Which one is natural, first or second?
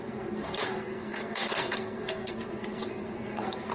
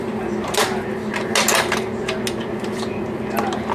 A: second